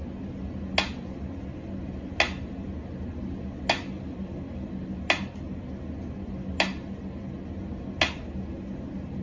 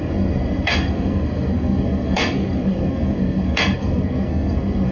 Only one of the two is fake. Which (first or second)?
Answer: second